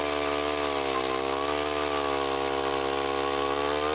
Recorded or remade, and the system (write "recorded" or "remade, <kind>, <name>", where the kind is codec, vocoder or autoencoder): recorded